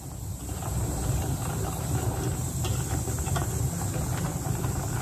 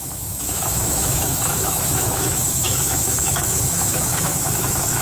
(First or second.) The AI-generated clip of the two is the second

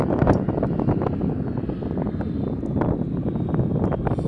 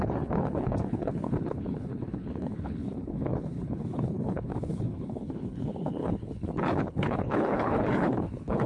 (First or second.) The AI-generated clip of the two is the second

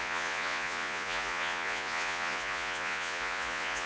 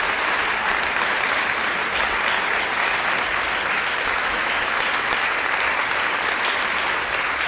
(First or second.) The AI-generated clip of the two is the first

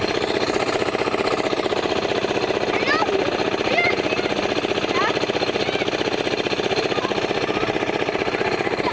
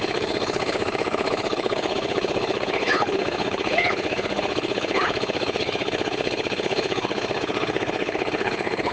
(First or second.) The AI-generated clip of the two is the second